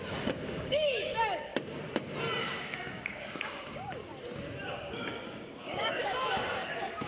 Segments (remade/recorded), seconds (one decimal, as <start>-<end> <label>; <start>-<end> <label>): 0.0-1.5 remade; 1.5-2.4 recorded; 2.4-4.1 remade; 4.1-4.7 recorded; 4.7-7.1 remade